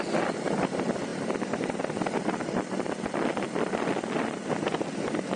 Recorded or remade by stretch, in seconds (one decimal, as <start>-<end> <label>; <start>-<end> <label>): 0.0-5.4 recorded